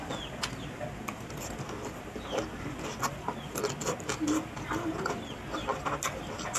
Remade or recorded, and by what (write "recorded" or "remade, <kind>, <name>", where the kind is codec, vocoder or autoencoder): recorded